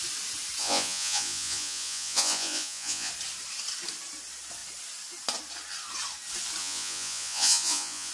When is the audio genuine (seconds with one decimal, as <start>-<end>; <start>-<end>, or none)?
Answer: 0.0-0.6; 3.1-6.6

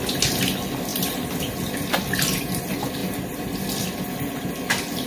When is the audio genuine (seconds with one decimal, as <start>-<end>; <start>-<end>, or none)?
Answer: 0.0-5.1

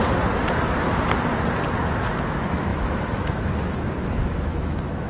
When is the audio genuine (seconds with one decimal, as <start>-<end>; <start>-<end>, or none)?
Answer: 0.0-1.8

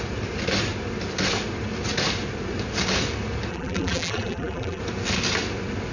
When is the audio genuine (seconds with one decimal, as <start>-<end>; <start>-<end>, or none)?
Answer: 0.0-3.5; 4.8-5.9

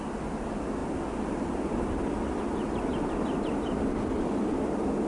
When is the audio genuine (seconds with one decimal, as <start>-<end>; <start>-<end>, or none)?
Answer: 0.0-5.1

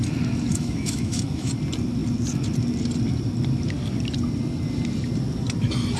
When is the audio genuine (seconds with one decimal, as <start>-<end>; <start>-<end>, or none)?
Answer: 0.0-0.5; 1.5-6.0